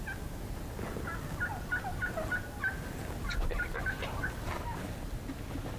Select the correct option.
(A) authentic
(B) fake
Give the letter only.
A